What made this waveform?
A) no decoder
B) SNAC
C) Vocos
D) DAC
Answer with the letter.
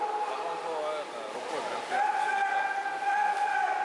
A